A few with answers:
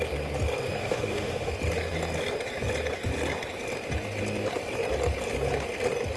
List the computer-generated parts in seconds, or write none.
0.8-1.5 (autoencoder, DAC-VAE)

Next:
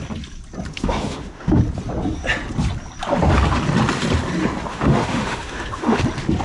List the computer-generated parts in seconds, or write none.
0.7-1.6 (autoencoder, DAC-VAE); 4.7-6.0